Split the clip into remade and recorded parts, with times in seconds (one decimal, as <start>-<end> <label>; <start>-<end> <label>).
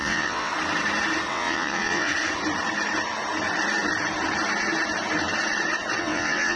0.0-0.5 remade; 0.5-1.3 recorded; 1.3-2.1 remade; 2.1-6.0 recorded; 6.0-6.6 remade